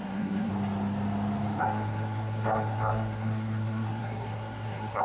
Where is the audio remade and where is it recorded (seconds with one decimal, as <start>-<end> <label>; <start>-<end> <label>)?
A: 0.0-0.5 remade; 0.5-1.6 recorded; 1.6-5.0 remade